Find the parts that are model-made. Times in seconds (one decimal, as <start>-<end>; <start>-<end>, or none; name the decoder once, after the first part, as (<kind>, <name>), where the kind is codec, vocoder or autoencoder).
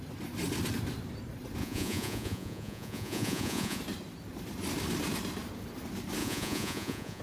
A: 1.6-3.8 (vocoder, Vocos); 6.2-7.2